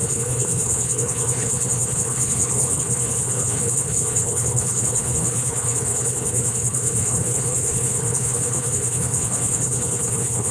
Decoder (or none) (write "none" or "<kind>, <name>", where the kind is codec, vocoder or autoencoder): codec, HILCodec